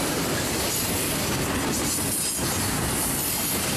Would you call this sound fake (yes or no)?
no